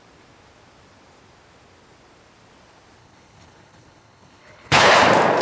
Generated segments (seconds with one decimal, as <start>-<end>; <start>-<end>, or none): 3.0-4.9